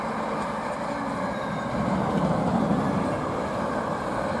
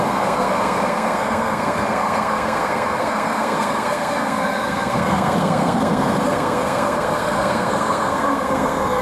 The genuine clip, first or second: first